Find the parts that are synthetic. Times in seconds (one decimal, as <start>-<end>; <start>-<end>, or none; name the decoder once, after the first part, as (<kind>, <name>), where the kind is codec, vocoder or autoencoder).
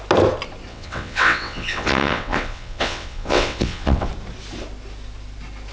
0.7-4.1 (vocoder, WaveNeXt)